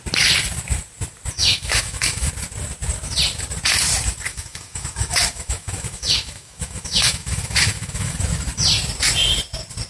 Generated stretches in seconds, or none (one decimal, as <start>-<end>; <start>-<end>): 1.4-2.3; 4.3-8.2